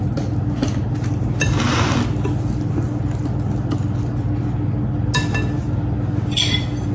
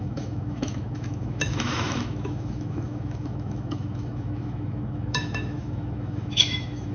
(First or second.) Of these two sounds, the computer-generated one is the second